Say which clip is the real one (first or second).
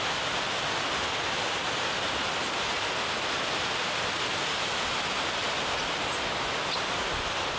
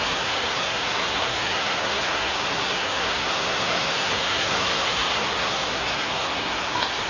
first